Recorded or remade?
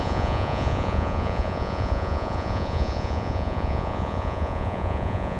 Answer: remade